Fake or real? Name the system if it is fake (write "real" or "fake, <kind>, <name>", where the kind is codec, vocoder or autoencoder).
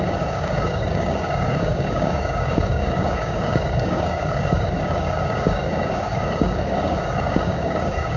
fake, codec, DAC